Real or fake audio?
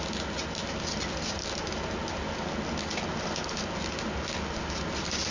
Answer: real